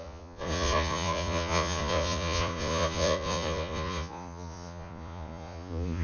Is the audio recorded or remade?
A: remade